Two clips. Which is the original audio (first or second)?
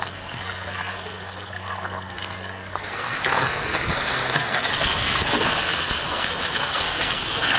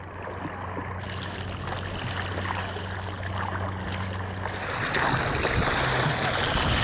second